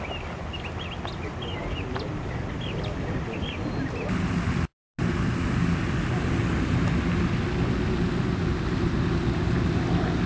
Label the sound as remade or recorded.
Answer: recorded